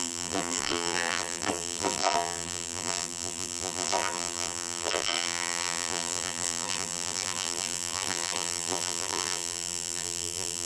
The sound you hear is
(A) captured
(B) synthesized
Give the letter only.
B